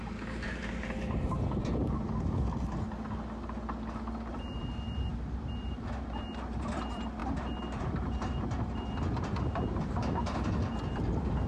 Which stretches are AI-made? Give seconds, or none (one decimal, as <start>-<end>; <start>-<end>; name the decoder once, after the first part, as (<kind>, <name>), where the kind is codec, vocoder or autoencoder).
0.0-1.8 (vocoder, BigVGAN v2); 4.3-11.5